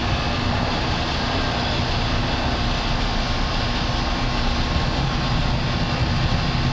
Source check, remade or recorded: recorded